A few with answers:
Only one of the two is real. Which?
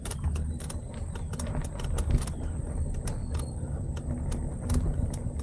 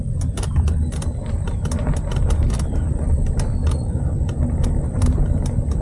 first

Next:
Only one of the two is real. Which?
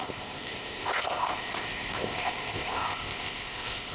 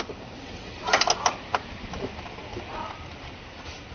second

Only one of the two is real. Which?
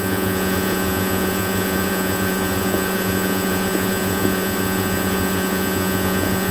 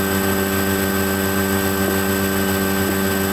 second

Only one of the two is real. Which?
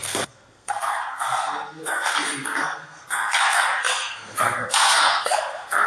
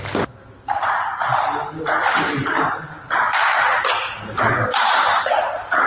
second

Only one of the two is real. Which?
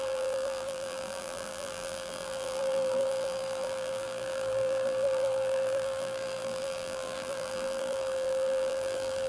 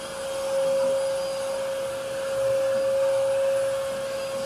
second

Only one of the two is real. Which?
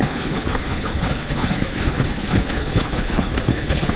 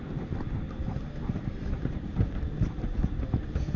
second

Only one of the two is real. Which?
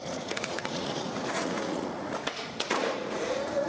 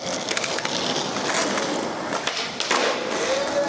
second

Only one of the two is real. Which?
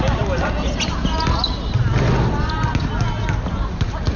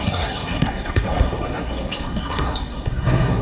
first